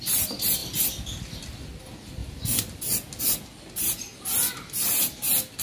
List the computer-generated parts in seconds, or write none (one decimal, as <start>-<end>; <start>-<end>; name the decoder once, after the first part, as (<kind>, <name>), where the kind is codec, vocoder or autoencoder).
2.2-3.3 (vocoder, BigVGAN v2)